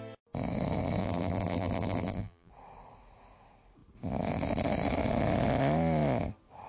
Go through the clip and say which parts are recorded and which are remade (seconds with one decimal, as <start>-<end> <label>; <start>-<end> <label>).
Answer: 0.0-1.0 recorded; 1.0-2.5 remade; 2.5-6.7 recorded